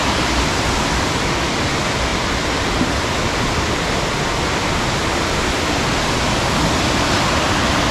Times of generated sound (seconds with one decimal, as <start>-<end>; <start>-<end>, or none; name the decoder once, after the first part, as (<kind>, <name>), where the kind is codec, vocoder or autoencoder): none